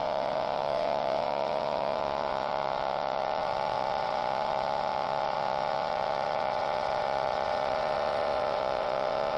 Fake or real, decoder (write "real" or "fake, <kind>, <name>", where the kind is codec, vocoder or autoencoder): fake, vocoder, WaveNeXt